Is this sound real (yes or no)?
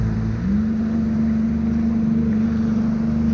yes